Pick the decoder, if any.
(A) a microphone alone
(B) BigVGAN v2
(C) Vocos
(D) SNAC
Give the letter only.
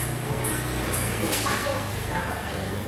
D